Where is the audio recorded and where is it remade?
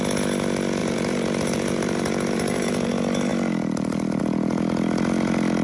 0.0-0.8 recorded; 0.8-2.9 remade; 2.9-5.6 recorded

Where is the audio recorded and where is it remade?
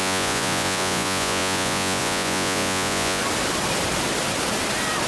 0.0-3.2 remade; 3.2-5.1 recorded